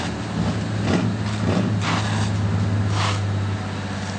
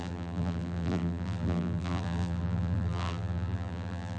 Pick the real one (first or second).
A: first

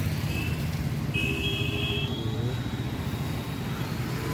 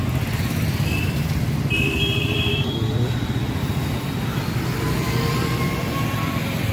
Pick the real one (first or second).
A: first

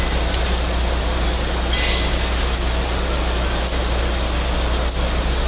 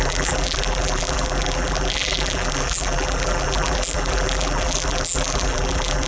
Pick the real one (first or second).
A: first